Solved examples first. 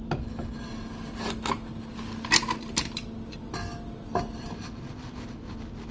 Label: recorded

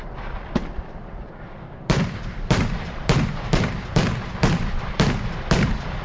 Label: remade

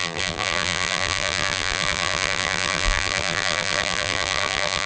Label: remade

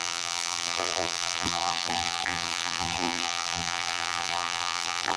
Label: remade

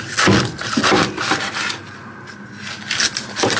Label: recorded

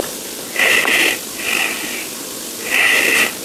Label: remade